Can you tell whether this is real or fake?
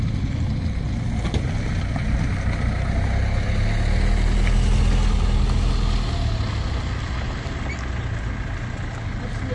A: real